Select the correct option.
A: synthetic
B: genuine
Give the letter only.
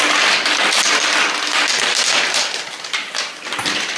B